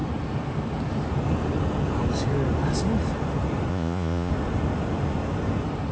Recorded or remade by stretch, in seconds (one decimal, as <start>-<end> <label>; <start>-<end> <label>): 0.0-3.7 recorded; 3.7-4.3 remade; 4.3-5.9 recorded